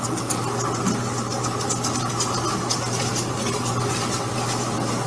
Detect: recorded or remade recorded